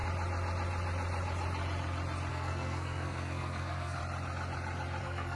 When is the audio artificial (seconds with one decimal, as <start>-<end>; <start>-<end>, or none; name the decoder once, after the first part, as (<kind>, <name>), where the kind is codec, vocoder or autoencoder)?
2.3-4.0 (codec, SNAC); 5.0-5.4